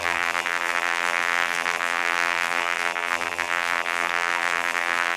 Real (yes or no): no